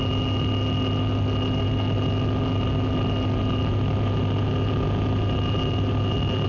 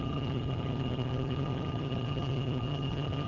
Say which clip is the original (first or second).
first